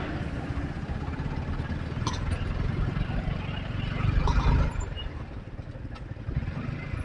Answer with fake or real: real